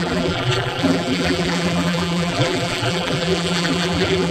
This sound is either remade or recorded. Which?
remade